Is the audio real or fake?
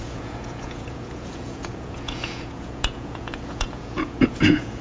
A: fake